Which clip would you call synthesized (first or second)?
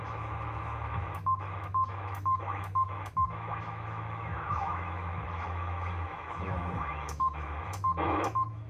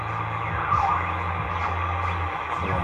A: first